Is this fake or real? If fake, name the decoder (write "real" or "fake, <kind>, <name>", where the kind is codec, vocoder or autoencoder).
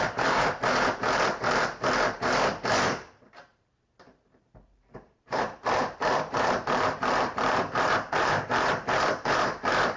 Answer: fake, vocoder, BigVGAN v2